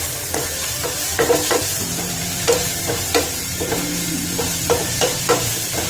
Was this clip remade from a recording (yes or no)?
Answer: yes